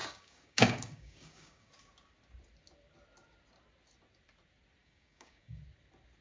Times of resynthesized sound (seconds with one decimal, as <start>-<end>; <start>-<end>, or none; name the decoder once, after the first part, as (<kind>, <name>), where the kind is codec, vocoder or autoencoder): 0.0-1.7 (codec, DAC); 4.8-5.6